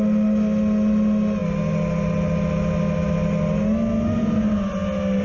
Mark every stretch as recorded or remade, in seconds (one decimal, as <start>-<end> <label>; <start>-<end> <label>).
0.0-5.2 recorded